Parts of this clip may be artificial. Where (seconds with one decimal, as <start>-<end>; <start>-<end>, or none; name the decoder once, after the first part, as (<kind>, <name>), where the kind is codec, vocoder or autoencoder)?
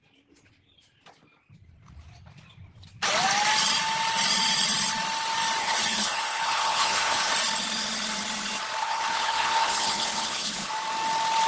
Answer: 5.6-7.3 (codec, HILCodec); 8.8-10.7